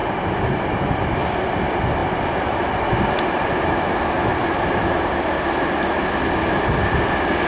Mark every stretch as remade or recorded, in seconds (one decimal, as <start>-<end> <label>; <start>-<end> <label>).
0.0-7.5 recorded